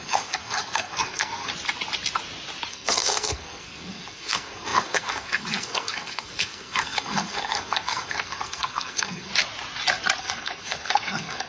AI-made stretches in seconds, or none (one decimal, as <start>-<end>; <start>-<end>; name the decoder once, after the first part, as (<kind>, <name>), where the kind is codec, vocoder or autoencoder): 0.0-1.5 (codec, SNAC); 2.7-9.3; 10.2-11.5